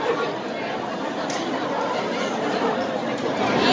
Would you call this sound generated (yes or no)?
no